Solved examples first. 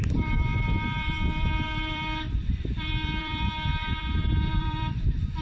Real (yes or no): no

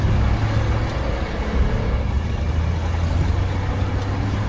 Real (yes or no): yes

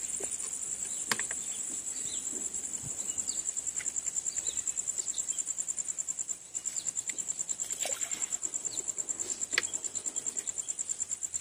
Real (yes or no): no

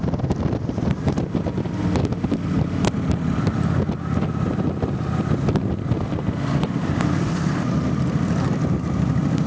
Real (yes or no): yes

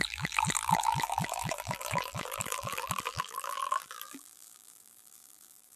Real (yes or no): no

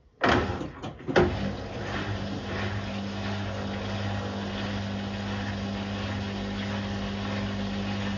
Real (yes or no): yes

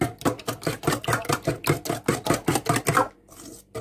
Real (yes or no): yes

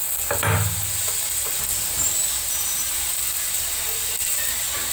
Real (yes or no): yes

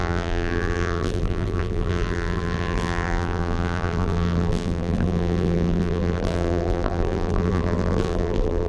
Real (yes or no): no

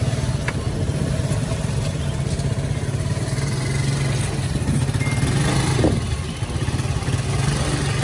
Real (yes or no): yes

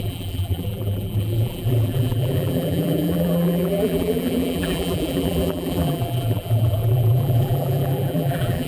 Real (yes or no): no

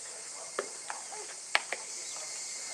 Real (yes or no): no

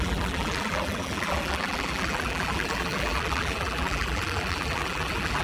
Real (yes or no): no